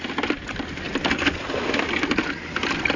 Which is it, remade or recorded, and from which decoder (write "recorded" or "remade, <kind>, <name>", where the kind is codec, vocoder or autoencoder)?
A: recorded